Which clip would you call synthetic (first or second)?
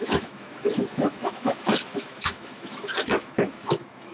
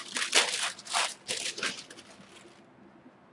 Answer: first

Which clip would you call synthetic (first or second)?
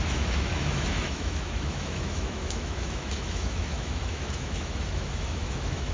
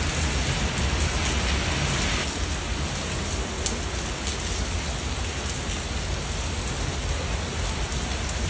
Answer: first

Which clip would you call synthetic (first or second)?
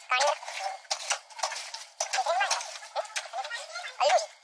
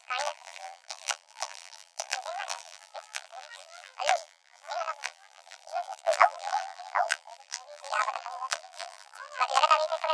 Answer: second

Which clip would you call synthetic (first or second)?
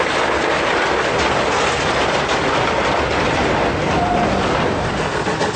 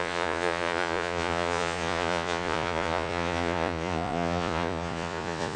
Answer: second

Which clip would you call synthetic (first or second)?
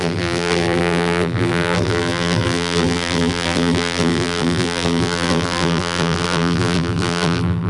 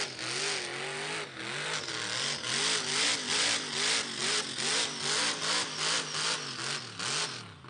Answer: first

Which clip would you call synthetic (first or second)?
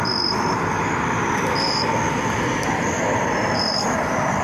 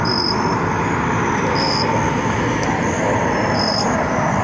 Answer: first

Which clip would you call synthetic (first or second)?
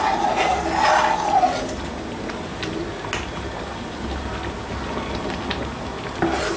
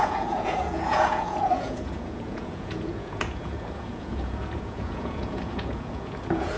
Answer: second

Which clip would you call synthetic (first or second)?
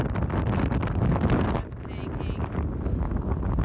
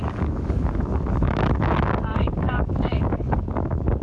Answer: second